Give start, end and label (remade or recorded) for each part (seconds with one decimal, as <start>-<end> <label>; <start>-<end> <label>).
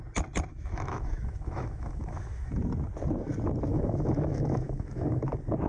0.0-0.5 recorded; 0.5-2.5 remade; 2.5-3.7 recorded; 3.7-5.2 remade; 5.2-5.7 recorded